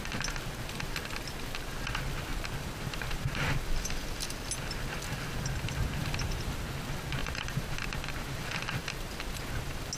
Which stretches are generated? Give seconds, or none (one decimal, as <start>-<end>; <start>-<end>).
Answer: 2.3-3.5; 6.0-6.6; 7.2-8.4